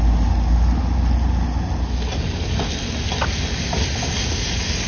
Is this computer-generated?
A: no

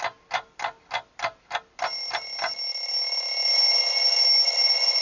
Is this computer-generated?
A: no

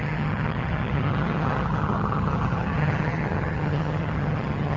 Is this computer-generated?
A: yes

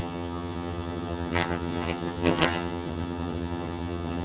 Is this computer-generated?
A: yes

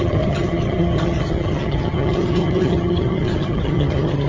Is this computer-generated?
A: yes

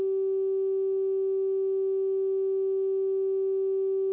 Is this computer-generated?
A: no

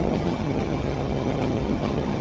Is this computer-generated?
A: yes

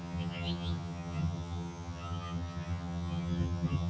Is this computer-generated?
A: yes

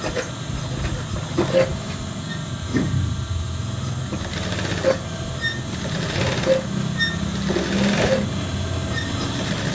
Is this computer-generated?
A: no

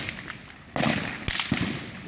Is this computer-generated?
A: no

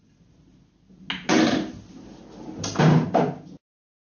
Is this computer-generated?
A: no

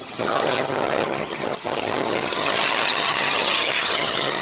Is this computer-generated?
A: yes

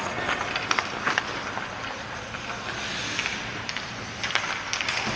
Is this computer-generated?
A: no